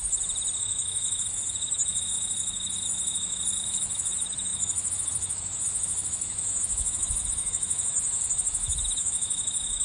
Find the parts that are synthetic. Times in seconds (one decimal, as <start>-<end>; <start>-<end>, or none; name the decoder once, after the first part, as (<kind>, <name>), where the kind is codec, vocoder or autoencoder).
0.6-9.8 (autoencoder, DAC-VAE)